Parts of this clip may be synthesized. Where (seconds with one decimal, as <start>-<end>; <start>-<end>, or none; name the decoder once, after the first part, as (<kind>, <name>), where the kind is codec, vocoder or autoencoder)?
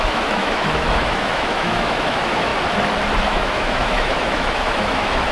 0.0-2.5 (autoencoder, DAC-VAE); 3.2-5.3